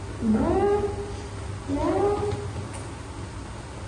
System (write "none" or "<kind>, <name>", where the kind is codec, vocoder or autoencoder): none